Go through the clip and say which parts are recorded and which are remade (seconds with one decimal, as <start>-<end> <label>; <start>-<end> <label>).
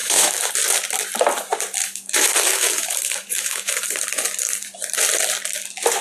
0.0-0.5 remade; 0.5-1.8 recorded; 1.8-3.8 remade; 3.8-6.0 recorded